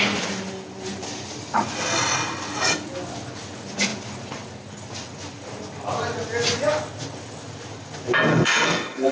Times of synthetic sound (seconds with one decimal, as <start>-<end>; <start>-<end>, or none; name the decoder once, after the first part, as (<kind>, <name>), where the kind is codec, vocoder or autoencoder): 8.3-9.1 (codec, SNAC)